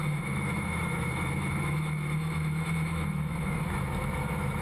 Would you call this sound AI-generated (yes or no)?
yes